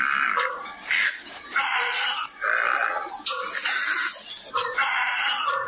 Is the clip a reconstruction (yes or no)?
no